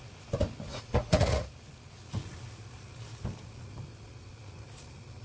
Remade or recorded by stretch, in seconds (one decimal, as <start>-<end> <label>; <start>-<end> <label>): 0.0-0.7 recorded; 0.7-1.5 remade; 1.5-5.2 recorded